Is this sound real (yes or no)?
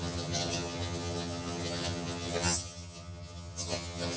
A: no